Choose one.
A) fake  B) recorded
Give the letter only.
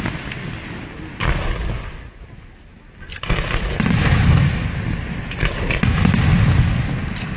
B